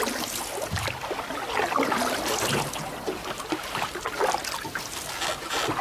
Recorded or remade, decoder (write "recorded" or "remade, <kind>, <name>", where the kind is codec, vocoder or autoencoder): recorded